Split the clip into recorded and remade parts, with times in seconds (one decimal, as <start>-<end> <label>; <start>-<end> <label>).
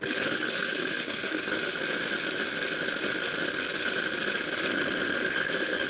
0.0-1.8 remade; 1.8-5.3 recorded; 5.3-5.9 remade